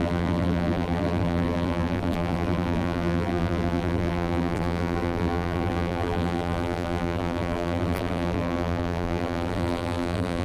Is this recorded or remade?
remade